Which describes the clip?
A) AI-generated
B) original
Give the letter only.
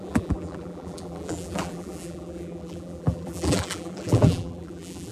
A